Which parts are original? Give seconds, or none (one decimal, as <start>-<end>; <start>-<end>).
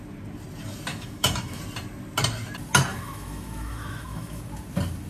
0.0-0.9; 1.6-2.9; 4.4-5.1